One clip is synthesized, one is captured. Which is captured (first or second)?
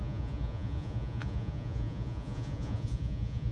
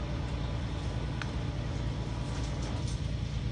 second